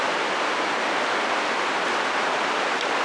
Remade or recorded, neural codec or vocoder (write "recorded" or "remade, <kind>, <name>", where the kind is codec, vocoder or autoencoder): recorded